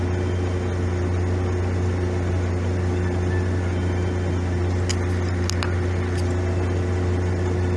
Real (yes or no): yes